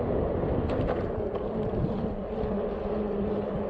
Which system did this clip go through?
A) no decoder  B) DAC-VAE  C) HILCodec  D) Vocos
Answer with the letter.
A